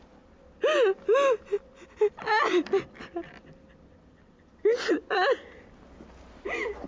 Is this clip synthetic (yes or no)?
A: no